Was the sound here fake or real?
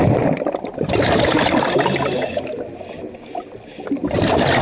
real